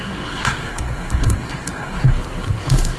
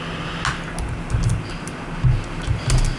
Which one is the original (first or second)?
second